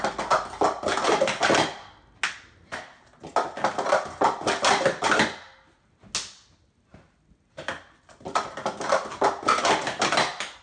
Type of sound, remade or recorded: recorded